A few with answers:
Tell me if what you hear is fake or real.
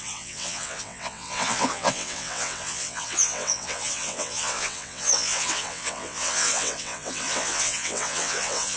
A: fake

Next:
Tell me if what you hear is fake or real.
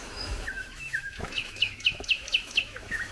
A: fake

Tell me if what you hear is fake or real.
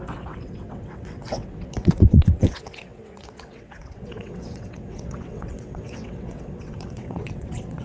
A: fake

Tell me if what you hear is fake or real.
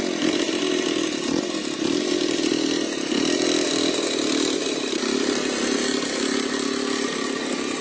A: real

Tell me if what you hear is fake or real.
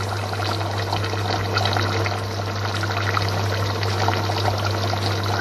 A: real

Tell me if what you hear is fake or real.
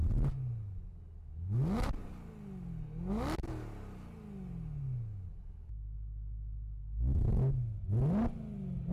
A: real